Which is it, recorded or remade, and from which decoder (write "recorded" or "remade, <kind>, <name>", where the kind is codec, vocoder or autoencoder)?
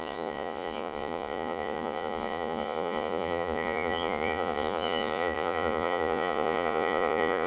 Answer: remade, vocoder, Vocos